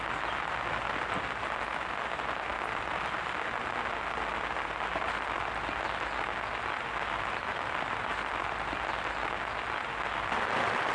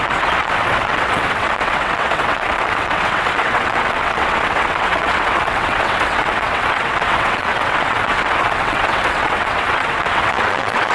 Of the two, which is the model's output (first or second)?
second